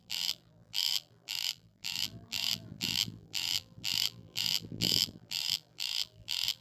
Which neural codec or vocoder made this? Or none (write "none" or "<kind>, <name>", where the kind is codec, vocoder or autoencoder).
vocoder, BigVGAN v2